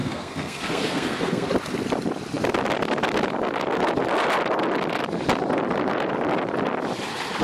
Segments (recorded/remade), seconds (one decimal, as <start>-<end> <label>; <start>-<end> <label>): 0.0-1.5 remade; 1.5-7.4 recorded